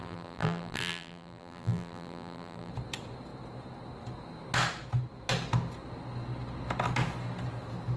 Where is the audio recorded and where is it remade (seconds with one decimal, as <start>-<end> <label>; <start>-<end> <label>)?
0.0-2.7 remade; 2.7-8.0 recorded